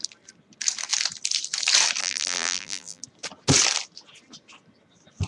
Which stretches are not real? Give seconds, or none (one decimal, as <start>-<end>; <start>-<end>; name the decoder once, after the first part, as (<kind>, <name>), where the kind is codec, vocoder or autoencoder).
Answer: 2.0-3.0 (vocoder, BigVGAN v2)